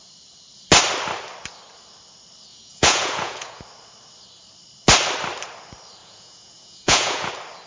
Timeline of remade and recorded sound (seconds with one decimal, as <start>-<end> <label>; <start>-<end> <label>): 0.0-2.5 recorded; 2.5-3.6 remade; 3.6-6.0 recorded; 6.0-7.3 remade; 7.3-7.7 recorded